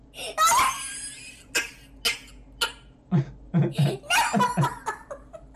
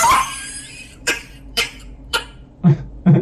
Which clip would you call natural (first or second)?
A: first